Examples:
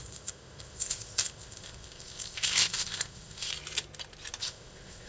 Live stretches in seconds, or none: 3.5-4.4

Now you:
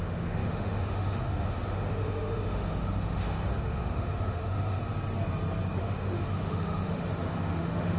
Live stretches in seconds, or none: 4.8-5.8

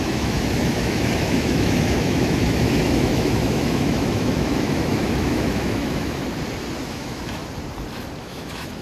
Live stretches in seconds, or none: 6.2-6.9; 7.4-8.2

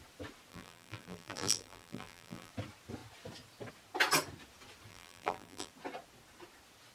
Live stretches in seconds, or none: 0.0-0.5; 2.5-4.9; 5.7-6.9